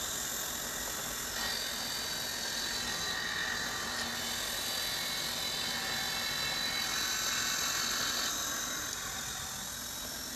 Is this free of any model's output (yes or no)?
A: yes